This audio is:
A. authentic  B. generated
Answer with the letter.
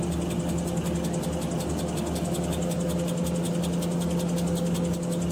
A